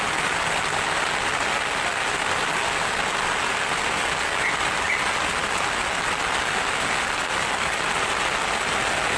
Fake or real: real